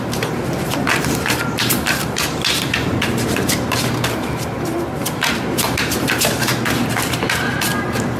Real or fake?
fake